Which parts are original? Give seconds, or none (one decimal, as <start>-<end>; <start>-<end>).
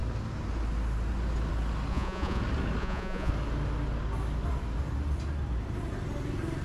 0.0-1.9; 2.4-2.8; 3.3-6.6